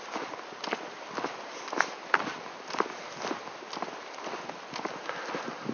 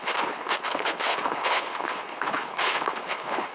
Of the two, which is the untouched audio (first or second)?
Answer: first